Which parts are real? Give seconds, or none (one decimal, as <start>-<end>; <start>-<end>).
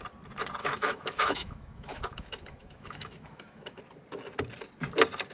0.0-0.6; 3.8-5.3